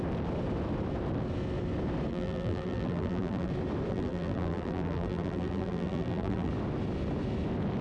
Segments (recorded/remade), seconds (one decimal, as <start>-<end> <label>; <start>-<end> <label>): 0.0-2.1 recorded; 2.1-3.5 remade; 3.5-3.9 recorded; 3.9-6.5 remade; 6.5-7.8 recorded